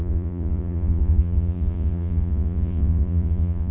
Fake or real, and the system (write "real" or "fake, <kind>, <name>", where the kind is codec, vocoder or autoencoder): fake, vocoder, Vocos